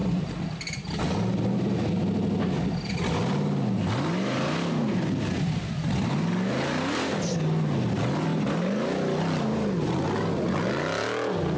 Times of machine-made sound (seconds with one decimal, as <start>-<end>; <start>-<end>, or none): 0.0-1.0